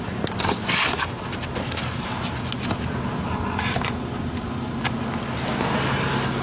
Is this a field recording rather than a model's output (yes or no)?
yes